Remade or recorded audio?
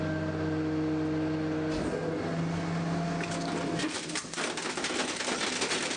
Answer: recorded